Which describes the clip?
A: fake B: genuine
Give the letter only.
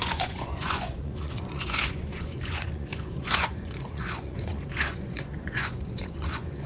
A